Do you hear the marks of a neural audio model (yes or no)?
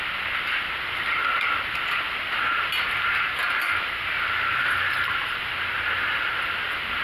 no